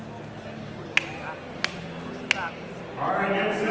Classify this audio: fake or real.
real